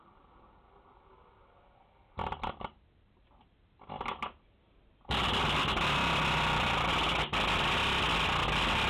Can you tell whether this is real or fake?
real